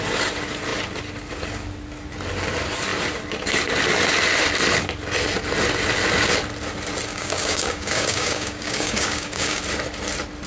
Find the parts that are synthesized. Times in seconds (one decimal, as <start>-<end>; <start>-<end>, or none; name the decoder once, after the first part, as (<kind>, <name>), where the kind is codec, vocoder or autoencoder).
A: 7.1-9.6 (codec, DAC)